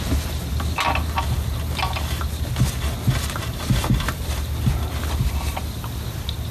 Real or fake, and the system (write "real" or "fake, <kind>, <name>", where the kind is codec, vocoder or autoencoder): real